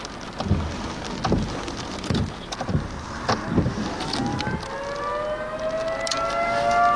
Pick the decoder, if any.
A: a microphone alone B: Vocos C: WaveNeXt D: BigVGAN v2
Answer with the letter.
A